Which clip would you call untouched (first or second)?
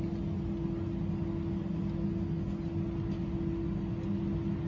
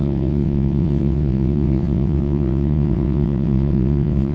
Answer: first